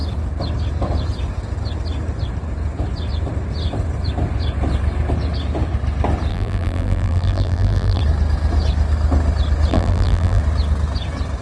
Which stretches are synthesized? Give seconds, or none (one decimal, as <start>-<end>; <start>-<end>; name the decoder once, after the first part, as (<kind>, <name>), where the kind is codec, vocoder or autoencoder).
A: 6.3-8.0 (vocoder, BigVGAN v2); 9.7-10.4